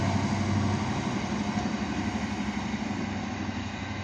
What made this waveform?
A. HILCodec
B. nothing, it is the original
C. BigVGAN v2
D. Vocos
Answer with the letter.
B